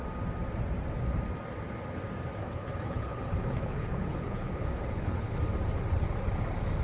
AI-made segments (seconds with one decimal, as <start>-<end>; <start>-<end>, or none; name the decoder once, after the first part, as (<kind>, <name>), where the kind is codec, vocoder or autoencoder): 2.4-5.4 (codec, HILCodec)